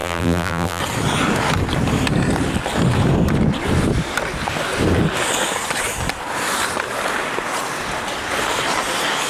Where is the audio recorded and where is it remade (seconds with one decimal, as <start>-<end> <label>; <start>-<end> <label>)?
0.0-0.8 remade; 0.8-9.3 recorded